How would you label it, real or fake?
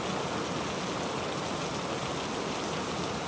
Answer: real